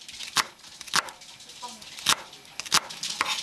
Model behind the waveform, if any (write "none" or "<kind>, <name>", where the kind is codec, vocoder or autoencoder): none